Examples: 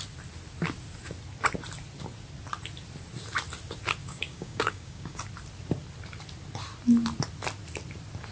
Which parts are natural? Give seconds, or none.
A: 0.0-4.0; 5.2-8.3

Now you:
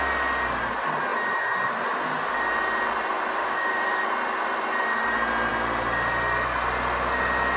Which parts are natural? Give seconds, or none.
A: 0.0-3.4; 4.0-7.6

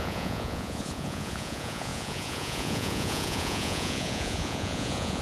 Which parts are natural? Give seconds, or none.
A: none

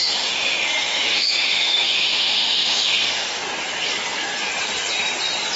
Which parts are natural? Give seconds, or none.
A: 3.4-5.6